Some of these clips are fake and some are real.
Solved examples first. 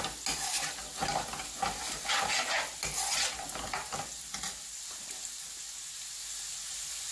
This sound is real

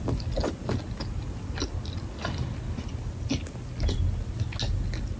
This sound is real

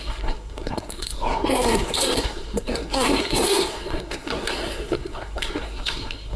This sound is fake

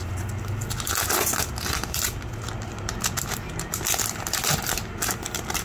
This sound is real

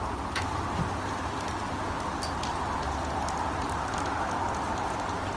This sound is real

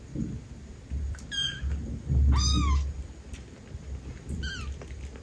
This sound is real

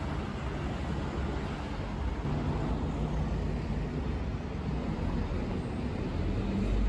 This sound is real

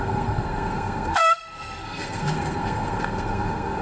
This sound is fake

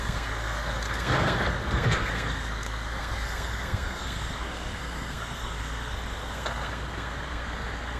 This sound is fake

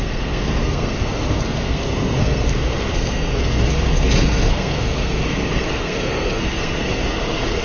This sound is fake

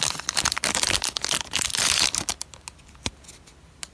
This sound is real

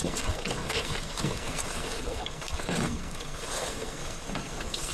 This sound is fake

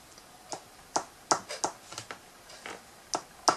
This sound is real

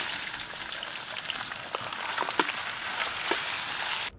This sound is real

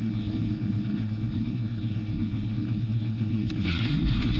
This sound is fake